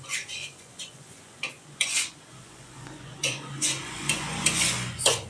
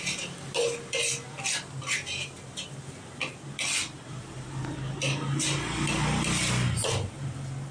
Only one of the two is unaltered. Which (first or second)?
second